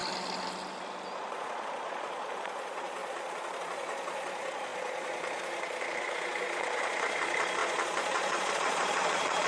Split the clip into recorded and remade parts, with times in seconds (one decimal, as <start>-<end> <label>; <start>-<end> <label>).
0.0-1.3 recorded; 1.3-9.5 remade